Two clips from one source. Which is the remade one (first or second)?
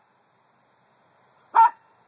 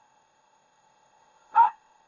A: second